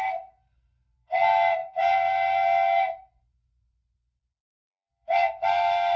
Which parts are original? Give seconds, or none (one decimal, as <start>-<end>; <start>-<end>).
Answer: none